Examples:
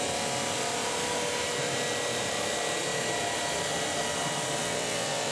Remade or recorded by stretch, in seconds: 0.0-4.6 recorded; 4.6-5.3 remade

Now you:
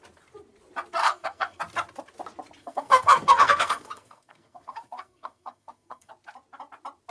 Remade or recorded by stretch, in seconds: 0.0-1.0 recorded; 1.0-1.6 remade; 1.6-2.6 recorded; 2.6-6.1 remade; 6.1-7.1 recorded